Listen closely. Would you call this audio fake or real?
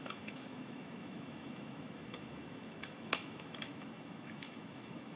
fake